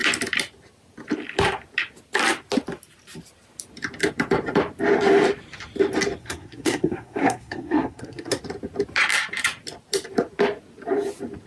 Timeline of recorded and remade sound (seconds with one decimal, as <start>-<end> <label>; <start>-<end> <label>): 0.0-6.2 recorded; 6.2-8.4 remade; 8.4-11.5 recorded